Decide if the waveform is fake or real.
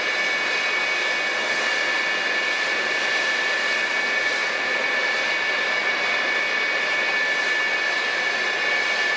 real